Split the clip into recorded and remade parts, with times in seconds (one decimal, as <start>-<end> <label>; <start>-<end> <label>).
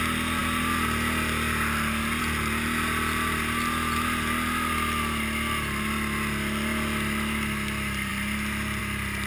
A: 0.0-9.3 recorded